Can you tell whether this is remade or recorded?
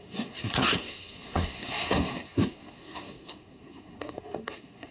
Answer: remade